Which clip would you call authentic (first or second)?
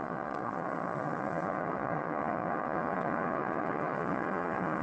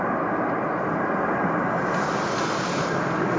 second